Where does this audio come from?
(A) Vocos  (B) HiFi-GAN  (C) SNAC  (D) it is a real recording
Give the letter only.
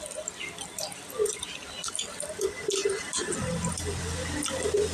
D